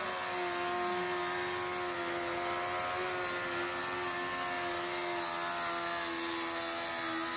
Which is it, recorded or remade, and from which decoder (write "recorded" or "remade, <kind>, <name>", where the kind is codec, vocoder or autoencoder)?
recorded